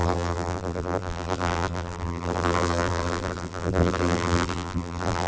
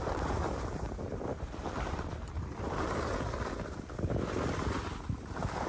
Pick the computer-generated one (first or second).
first